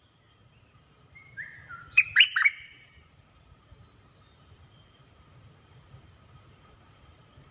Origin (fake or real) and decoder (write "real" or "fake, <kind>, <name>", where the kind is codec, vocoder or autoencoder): fake, vocoder, BigVGAN v2